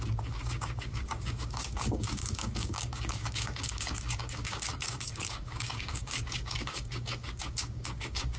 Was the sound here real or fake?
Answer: fake